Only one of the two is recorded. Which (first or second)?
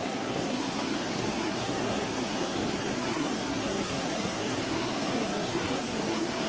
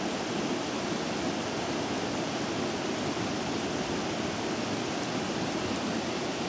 second